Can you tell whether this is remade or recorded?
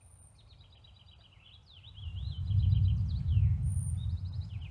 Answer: recorded